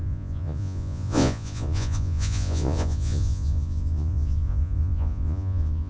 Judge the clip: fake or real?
fake